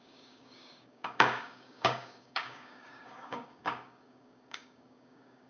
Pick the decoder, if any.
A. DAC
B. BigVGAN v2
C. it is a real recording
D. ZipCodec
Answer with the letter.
A